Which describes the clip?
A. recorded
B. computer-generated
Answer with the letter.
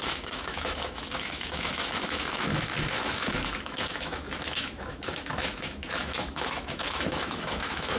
B